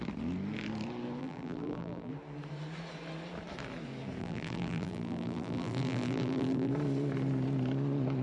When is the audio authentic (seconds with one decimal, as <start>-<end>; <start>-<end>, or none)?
0.0-1.2; 2.1-4.2; 6.7-8.2